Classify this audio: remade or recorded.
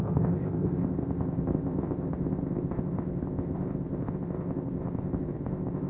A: remade